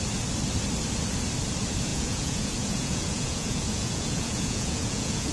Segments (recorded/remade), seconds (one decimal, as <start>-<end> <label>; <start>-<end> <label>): 0.0-1.9 recorded; 1.9-5.3 remade